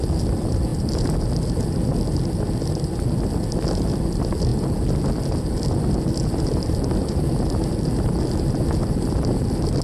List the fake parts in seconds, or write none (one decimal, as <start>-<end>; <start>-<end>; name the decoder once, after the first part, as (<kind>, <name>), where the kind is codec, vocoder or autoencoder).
none